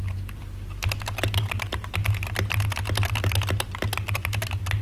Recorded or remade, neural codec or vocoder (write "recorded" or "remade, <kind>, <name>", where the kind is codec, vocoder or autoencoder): recorded